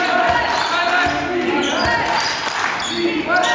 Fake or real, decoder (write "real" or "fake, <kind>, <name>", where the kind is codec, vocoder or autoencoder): real